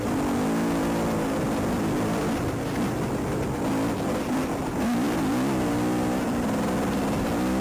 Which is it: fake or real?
real